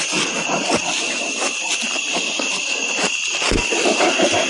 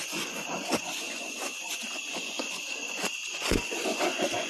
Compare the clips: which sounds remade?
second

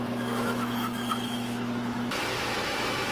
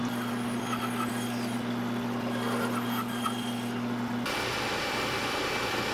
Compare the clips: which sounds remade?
first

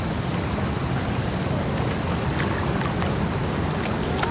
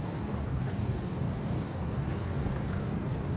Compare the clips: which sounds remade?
second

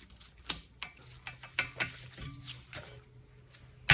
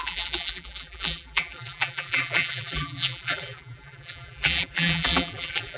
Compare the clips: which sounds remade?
second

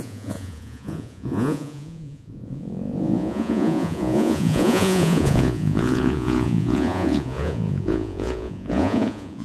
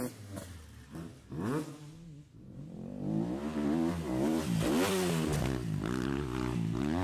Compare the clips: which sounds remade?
first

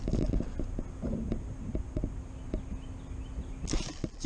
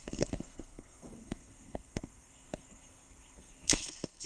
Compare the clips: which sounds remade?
second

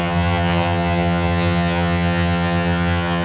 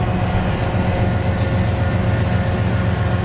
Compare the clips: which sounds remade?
first